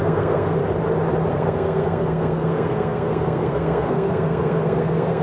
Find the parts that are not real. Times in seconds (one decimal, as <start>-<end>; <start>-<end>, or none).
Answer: 0.0-0.6; 1.3-5.2

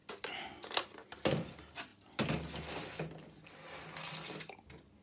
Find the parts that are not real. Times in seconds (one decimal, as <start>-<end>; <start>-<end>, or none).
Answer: none

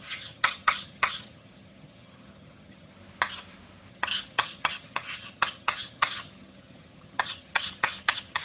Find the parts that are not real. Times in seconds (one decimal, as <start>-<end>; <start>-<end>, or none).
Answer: 0.0-2.9; 3.9-8.4

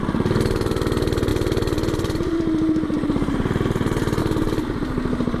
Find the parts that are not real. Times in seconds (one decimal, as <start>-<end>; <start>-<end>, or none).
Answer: none

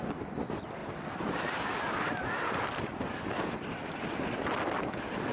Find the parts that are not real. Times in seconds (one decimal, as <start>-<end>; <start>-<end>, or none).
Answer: 0.8-4.0

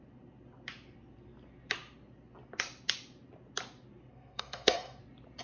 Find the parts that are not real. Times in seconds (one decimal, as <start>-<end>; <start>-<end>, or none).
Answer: 4.1-5.0

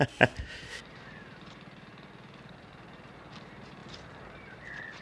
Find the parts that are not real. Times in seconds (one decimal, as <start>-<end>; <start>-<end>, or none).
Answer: 0.0-1.9; 2.6-5.0

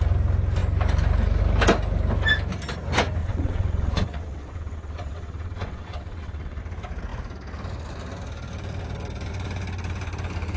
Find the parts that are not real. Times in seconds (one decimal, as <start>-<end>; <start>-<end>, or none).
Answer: 3.2-6.6